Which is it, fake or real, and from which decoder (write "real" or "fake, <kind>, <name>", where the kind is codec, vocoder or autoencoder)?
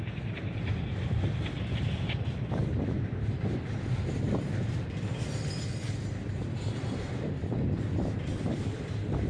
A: fake, vocoder, BigVGAN v2